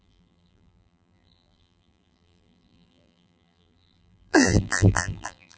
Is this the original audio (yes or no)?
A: no